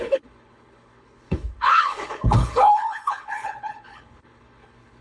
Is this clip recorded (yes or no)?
no